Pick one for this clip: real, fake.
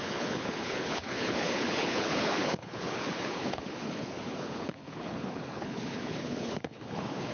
fake